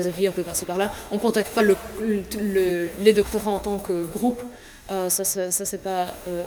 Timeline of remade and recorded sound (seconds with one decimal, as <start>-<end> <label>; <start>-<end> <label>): 0.0-1.6 remade; 1.6-2.7 recorded; 2.7-6.5 remade